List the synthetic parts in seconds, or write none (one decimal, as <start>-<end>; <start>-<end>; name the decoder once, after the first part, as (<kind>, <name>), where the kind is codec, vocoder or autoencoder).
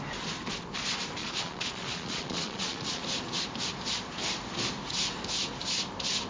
1.2-3.0 (vocoder, Vocos)